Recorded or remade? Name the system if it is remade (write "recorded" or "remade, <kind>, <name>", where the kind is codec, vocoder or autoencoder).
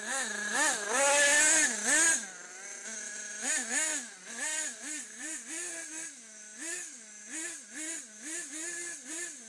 recorded